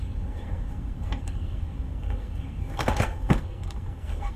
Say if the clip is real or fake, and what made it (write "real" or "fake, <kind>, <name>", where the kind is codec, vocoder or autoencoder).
fake, codec, SNAC